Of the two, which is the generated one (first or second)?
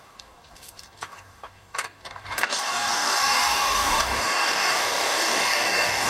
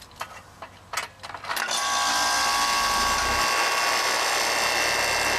first